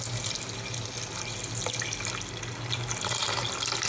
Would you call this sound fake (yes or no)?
no